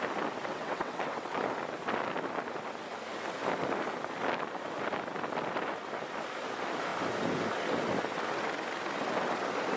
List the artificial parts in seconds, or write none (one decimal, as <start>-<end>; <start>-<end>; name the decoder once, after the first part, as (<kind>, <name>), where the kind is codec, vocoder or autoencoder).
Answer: 0.5-1.3 (vocoder, WaveNeXt)

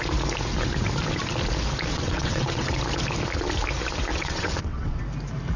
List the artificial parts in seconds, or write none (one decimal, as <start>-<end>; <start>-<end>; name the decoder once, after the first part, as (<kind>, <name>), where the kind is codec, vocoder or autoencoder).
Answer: 1.9-2.7 (vocoder, WaveNeXt); 4.1-5.0

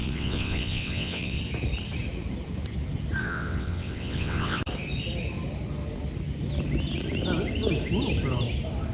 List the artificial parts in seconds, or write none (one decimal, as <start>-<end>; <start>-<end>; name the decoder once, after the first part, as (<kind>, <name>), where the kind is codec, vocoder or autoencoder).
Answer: 0.0-1.4 (vocoder, WaveNeXt); 3.2-4.6

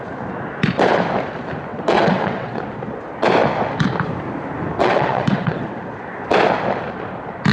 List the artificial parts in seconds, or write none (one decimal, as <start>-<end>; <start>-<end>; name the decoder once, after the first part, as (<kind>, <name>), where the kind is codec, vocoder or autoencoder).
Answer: 1.7-2.6 (vocoder, WaveNeXt); 4.8-5.8

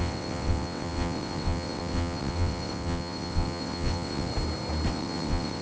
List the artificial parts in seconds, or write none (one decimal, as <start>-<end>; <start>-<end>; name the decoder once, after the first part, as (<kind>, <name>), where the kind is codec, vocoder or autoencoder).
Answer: 0.0-4.3 (vocoder, WaveNeXt); 4.9-5.6

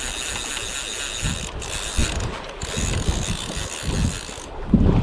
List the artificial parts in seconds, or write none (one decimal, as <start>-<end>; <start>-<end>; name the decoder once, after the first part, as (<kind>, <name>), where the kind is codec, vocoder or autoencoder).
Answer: none

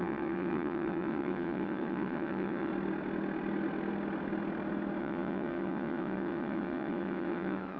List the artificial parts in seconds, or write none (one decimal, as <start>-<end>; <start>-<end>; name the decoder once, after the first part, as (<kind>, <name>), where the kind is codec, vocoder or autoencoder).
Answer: 0.0-2.7 (vocoder, WaveNeXt); 5.0-7.8

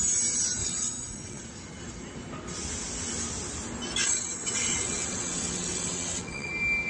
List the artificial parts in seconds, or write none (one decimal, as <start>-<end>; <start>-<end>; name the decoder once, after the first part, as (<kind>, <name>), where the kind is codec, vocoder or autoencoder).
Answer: 0.6-1.4 (vocoder, WaveNeXt); 4.0-6.5